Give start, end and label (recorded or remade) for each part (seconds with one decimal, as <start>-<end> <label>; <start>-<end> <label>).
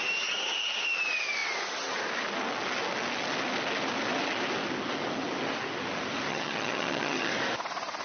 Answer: 0.0-6.3 recorded; 6.3-7.3 remade; 7.3-8.0 recorded